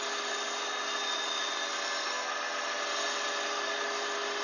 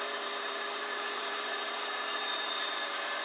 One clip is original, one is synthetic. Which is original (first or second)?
first